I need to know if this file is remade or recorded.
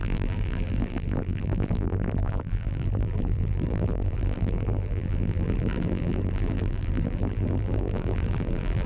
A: remade